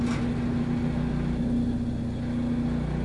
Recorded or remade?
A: recorded